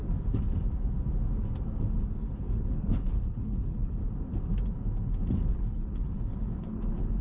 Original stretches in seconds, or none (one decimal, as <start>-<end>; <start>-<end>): 0.0-2.2; 4.0-5.5